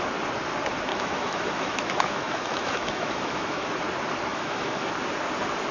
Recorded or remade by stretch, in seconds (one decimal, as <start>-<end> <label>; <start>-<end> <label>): 0.0-0.9 recorded; 0.9-3.7 remade; 3.7-4.3 recorded; 4.3-4.9 remade; 4.9-5.7 recorded